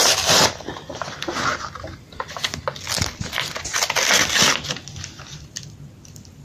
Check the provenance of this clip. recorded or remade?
recorded